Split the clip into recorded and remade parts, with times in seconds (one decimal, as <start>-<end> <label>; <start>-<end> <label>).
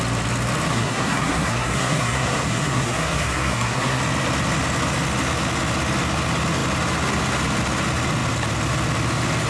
0.0-0.7 recorded; 0.7-4.0 remade; 4.0-9.5 recorded